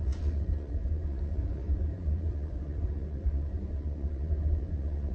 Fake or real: fake